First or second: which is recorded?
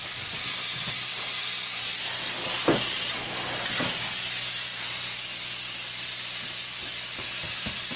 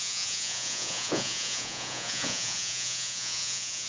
first